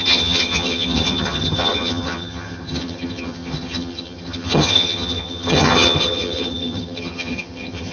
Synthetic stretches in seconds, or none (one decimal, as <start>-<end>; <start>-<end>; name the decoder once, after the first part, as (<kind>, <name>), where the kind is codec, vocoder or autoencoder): 0.0-7.9 (vocoder, HiFi-GAN)